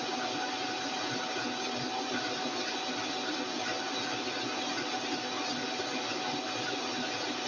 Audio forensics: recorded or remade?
recorded